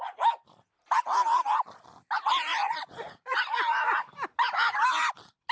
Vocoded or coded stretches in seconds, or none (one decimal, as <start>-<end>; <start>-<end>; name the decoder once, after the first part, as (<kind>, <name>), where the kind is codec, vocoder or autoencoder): 2.6-3.4 (vocoder, Vocos)